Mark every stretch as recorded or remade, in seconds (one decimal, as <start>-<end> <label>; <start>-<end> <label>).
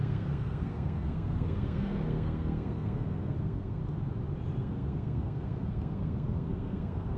0.0-3.8 remade; 3.8-4.6 recorded; 4.6-7.2 remade